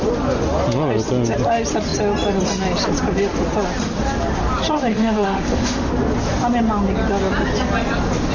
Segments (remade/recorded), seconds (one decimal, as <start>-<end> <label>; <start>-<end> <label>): 0.0-4.9 recorded; 4.9-5.9 remade; 5.9-8.3 recorded